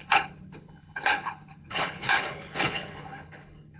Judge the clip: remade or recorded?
remade